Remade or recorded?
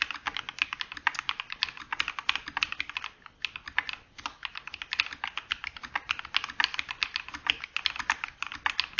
recorded